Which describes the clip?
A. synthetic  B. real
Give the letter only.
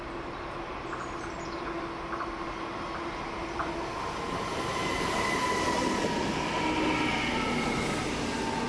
B